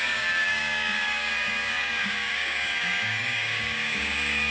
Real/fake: fake